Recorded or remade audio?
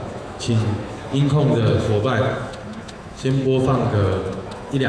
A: remade